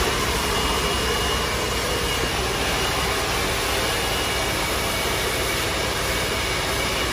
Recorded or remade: recorded